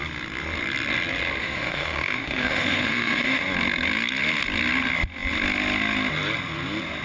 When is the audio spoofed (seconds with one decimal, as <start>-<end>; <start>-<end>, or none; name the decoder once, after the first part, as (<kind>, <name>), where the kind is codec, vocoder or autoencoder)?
1.4-3.4 (autoencoder, DAC-VAE)